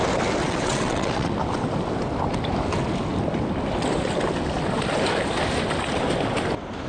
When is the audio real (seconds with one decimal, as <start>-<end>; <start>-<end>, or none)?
0.0-0.4; 1.3-6.9